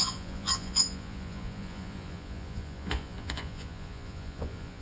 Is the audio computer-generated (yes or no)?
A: yes